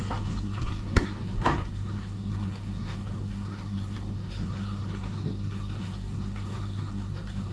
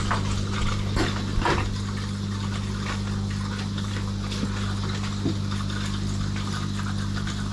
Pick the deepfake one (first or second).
first